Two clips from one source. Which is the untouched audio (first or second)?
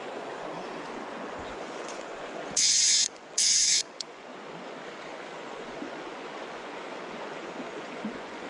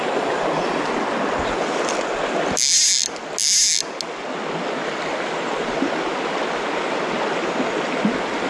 second